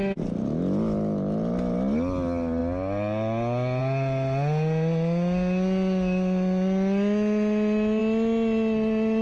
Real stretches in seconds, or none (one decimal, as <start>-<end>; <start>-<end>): 0.0-9.2